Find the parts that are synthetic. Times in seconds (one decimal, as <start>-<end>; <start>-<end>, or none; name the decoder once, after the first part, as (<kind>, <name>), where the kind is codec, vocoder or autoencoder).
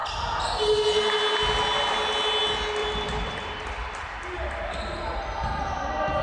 2.8-4.7 (vocoder, BigVGAN v2)